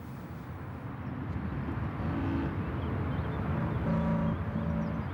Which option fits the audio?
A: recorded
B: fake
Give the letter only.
A